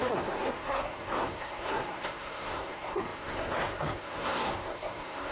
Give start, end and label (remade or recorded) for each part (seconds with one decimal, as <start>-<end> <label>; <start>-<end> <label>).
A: 0.0-5.3 remade